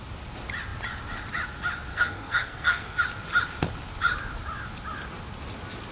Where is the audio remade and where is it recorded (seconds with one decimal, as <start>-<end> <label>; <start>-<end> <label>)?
0.0-1.9 recorded; 1.9-3.0 remade; 3.0-5.9 recorded